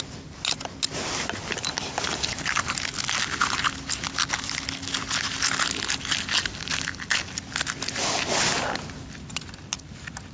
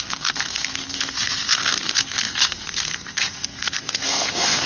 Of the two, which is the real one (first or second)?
first